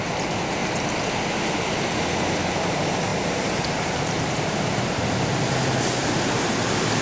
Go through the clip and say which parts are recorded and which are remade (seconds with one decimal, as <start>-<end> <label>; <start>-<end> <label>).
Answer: 0.0-3.1 recorded; 3.1-5.0 remade; 5.0-6.0 recorded; 6.0-6.5 remade; 6.5-7.0 recorded